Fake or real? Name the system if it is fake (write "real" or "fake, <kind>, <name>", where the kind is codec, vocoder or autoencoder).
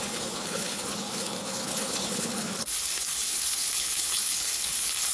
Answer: fake, codec, HILCodec